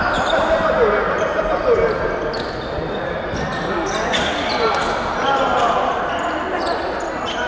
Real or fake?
real